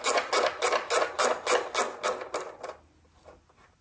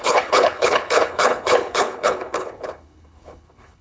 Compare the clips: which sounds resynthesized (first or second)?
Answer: second